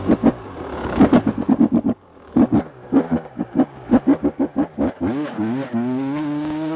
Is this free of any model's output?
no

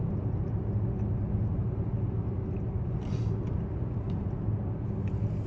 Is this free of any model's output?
yes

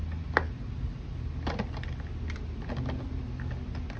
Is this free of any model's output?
yes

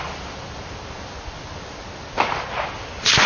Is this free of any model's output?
yes